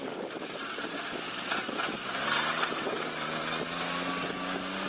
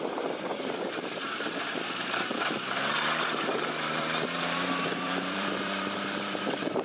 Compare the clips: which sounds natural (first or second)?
first